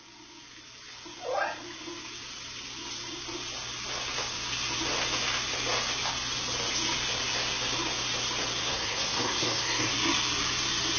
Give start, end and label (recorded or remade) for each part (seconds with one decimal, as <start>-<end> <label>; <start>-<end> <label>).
0.0-8.6 recorded; 8.6-9.9 remade; 9.9-11.0 recorded